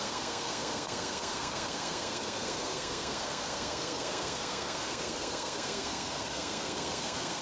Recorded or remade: remade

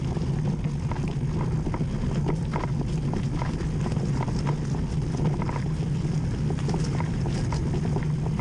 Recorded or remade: recorded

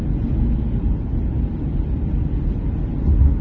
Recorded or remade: recorded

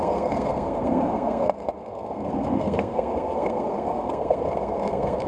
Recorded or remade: remade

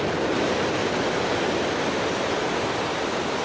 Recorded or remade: recorded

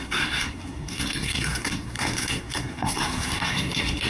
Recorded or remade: remade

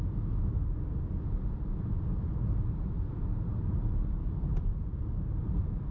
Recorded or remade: recorded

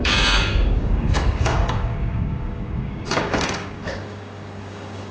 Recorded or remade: remade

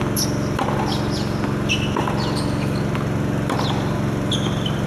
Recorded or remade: recorded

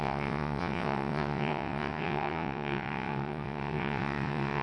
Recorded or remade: remade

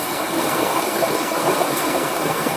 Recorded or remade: remade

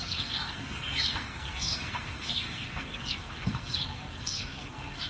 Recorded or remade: remade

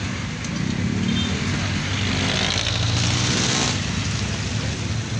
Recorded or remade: recorded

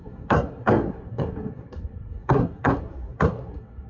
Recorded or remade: remade